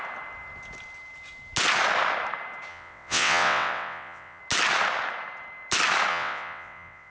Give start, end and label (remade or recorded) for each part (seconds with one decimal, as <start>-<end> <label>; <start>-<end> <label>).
0.0-2.7 recorded; 2.7-4.4 remade; 4.4-6.1 recorded; 6.1-7.1 remade